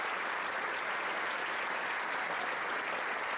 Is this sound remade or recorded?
recorded